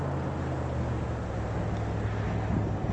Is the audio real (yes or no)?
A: yes